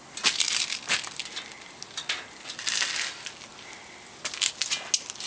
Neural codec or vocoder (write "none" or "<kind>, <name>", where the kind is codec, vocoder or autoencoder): none